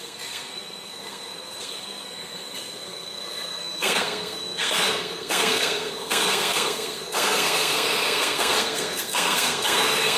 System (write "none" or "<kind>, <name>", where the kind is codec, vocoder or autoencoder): codec, SNAC